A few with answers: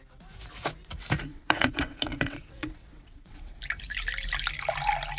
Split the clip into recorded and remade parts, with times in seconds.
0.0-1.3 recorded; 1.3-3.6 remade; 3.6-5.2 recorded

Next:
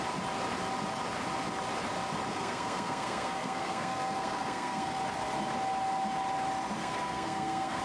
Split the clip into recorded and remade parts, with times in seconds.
0.0-2.3 recorded; 2.3-5.0 remade; 5.0-6.8 recorded; 6.8-7.8 remade